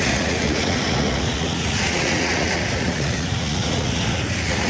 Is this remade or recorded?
remade